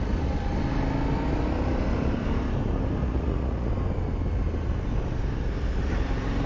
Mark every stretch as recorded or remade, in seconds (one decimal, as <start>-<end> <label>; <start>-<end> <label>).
0.0-3.0 recorded; 3.0-3.7 remade; 3.7-6.5 recorded